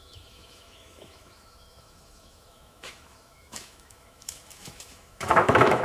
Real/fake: fake